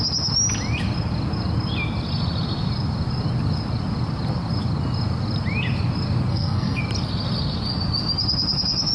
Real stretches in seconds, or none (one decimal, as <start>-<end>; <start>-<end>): 0.0-6.3; 6.8-8.9